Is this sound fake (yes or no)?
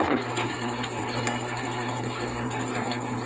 yes